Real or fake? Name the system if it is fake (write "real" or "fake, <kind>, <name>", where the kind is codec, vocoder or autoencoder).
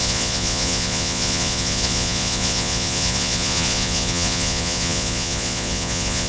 fake, vocoder, Vocos